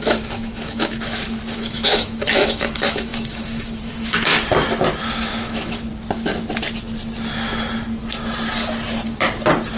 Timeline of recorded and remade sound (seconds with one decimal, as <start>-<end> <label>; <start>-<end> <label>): 0.0-4.3 remade; 4.3-5.1 recorded; 5.1-5.9 remade; 5.9-9.8 recorded